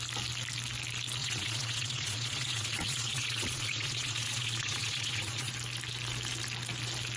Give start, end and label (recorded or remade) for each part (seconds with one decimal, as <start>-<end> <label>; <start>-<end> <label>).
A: 0.0-1.2 recorded; 1.2-5.5 remade; 5.5-7.2 recorded